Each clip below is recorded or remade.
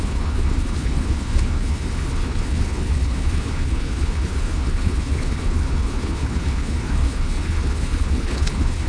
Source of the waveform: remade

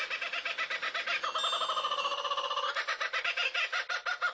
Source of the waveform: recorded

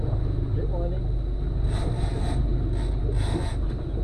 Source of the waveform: recorded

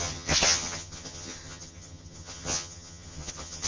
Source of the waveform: remade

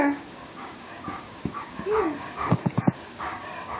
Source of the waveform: remade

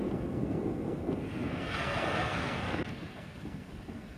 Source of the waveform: remade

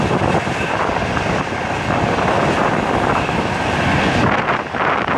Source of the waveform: recorded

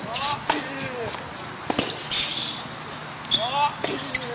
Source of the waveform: recorded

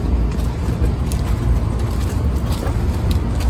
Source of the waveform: recorded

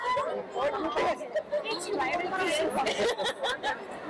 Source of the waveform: recorded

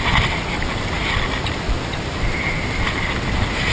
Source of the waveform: recorded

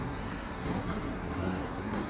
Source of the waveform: remade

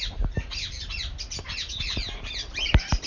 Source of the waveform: recorded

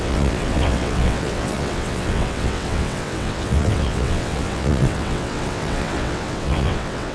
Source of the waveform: remade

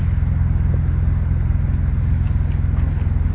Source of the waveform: recorded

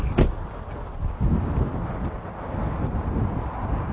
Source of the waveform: recorded